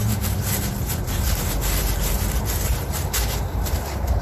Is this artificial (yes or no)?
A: yes